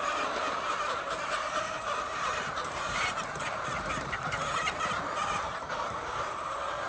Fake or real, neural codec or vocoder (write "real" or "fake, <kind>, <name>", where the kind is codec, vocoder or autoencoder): fake, vocoder, BigVGAN v2